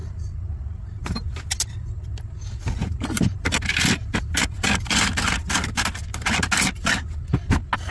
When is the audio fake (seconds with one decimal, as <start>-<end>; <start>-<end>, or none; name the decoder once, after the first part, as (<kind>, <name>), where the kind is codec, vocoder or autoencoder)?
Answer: 0.0-1.0 (vocoder, BigVGAN v2); 2.8-3.4; 4.0-4.6